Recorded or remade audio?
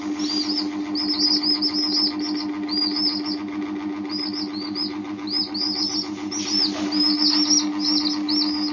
recorded